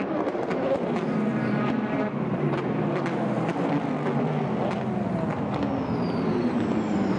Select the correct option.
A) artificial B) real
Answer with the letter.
B